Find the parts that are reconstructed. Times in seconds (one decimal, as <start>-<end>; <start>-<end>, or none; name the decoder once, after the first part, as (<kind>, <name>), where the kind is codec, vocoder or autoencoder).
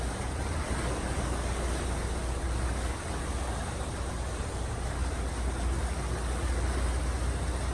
none